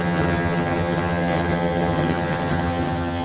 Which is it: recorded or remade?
remade